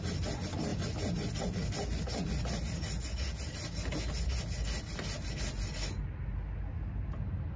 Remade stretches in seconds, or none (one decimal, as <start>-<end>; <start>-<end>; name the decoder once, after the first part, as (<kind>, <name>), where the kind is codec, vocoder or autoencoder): none